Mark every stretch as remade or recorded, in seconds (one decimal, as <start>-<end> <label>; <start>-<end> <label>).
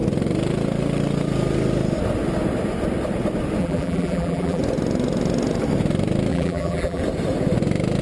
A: 0.0-3.6 recorded; 3.6-4.6 remade; 4.6-6.3 recorded; 6.3-7.0 remade; 7.0-8.0 recorded